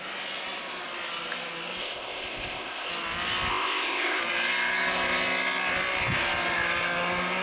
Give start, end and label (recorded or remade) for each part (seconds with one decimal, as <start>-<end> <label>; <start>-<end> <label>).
0.0-1.8 recorded; 1.8-2.9 remade; 2.9-3.5 recorded; 3.5-4.2 remade; 4.2-7.4 recorded